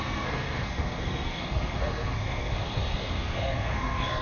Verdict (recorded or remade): remade